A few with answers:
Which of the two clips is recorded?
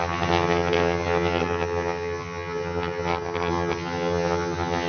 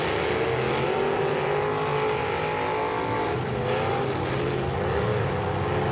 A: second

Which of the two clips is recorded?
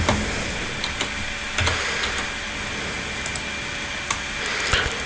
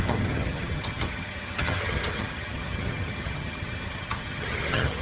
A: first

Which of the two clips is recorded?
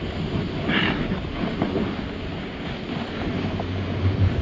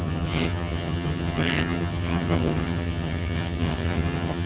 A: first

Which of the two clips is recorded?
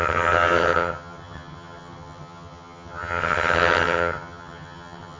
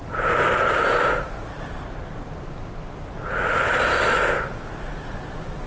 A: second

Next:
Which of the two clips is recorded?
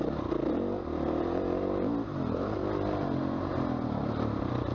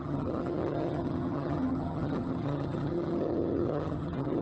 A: first